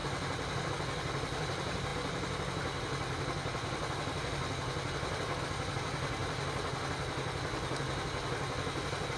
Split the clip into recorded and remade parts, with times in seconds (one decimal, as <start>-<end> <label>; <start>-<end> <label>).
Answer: 0.0-9.2 recorded